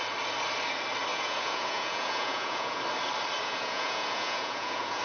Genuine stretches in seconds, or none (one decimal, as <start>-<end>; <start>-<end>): 0.0-1.1; 2.8-3.4